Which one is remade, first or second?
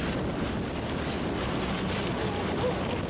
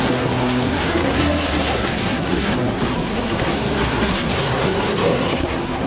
second